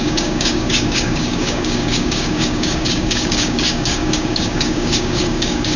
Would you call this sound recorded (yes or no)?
no